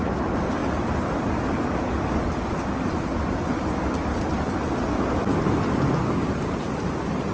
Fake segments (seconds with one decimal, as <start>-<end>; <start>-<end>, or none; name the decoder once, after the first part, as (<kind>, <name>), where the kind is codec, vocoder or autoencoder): none